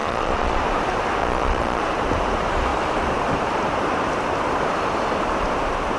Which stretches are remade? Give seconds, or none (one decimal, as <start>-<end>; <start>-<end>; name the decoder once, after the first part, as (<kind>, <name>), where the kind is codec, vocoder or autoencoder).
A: 0.0-0.6 (vocoder, Vocos); 1.2-1.8